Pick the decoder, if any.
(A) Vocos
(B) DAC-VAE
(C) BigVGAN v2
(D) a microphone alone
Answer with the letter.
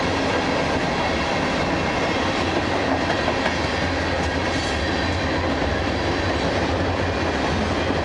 D